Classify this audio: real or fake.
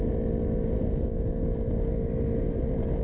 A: real